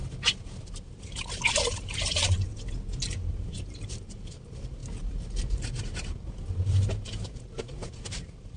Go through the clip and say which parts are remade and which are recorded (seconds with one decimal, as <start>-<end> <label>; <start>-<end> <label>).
0.0-0.7 recorded; 0.7-2.5 remade; 2.5-3.3 recorded; 3.3-8.6 remade